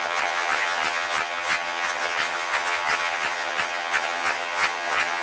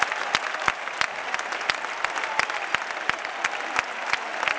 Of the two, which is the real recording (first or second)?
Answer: second